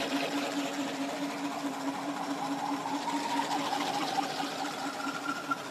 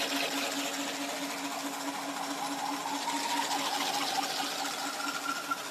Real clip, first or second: second